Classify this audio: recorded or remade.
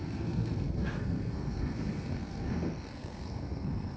remade